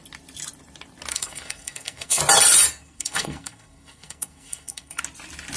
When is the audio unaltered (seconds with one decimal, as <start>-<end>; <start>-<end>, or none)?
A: 0.0-1.1; 2.2-2.7; 5.0-5.6